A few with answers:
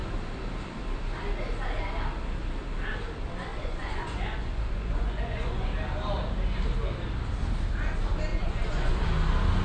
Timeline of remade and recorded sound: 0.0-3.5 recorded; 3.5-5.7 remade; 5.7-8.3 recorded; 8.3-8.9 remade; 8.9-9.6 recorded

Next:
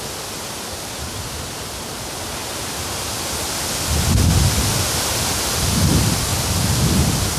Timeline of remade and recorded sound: 0.0-7.4 recorded

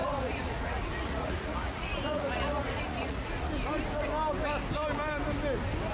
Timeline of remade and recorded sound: 0.0-3.5 remade; 3.5-5.9 recorded

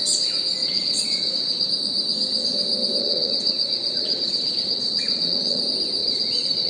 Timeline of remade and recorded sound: 0.0-0.6 recorded; 0.6-1.7 remade; 1.7-3.0 recorded; 3.0-5.6 remade; 5.6-6.0 recorded; 6.0-6.7 remade

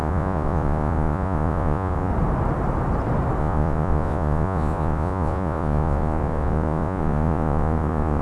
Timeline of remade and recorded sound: 0.0-2.1 remade; 2.1-3.4 recorded; 3.4-8.2 remade

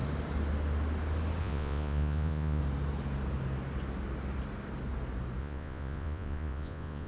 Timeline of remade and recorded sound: 0.0-1.4 recorded; 1.4-2.6 remade; 2.6-5.4 recorded; 5.4-7.1 remade

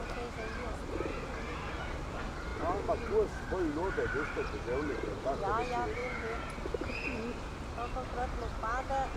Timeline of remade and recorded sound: 0.0-6.0 recorded; 6.0-6.5 remade; 6.5-9.2 recorded

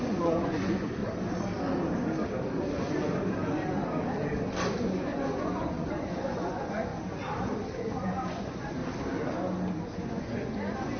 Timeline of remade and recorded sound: 0.0-1.0 remade; 1.0-4.7 recorded; 4.7-6.9 remade; 6.9-7.9 recorded; 7.9-8.8 remade; 8.8-10.0 recorded; 10.0-11.0 remade